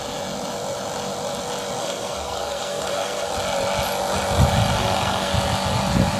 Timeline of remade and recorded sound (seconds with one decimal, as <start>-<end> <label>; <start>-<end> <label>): 0.0-1.8 recorded; 1.8-3.3 remade; 3.3-4.8 recorded; 4.8-5.3 remade; 5.3-6.2 recorded